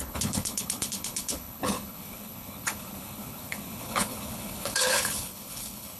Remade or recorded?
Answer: remade